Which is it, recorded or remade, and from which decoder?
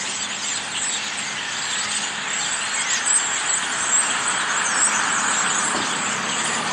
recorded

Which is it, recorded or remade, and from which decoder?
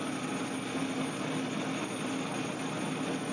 recorded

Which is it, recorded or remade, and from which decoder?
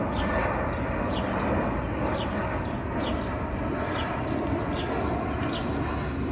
recorded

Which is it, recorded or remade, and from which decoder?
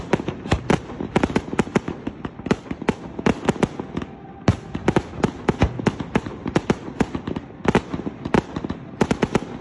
recorded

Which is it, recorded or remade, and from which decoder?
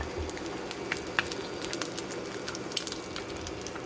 recorded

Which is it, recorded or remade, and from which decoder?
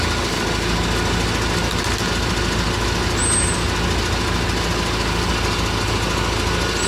recorded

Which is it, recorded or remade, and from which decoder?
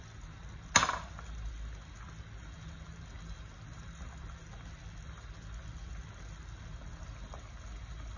recorded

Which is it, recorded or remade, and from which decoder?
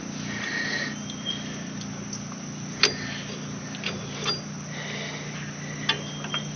recorded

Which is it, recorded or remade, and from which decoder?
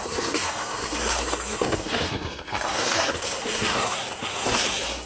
remade, codec, SNAC